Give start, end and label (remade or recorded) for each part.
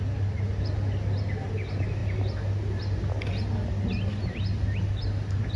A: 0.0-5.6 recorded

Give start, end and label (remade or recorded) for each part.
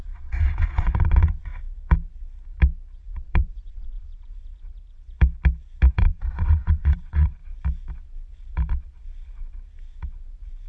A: 0.0-1.5 remade; 1.5-3.0 recorded; 3.0-4.4 remade; 4.4-5.9 recorded; 5.9-7.4 remade; 7.4-10.7 recorded